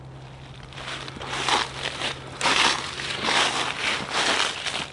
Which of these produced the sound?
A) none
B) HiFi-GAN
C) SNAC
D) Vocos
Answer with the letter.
A